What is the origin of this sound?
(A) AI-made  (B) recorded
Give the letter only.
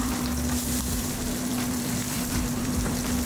A